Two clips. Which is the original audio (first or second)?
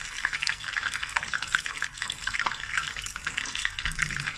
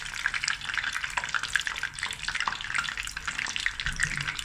second